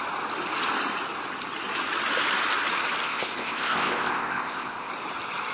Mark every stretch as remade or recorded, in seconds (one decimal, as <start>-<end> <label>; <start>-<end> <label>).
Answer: 0.0-3.0 recorded; 3.0-4.9 remade; 4.9-5.5 recorded